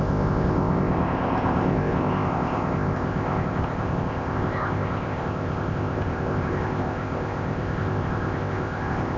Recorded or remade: remade